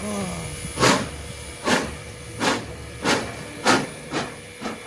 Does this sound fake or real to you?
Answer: real